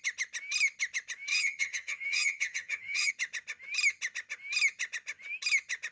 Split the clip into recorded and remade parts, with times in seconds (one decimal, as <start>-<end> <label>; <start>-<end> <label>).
0.0-1.3 recorded; 1.3-3.1 remade; 3.1-5.9 recorded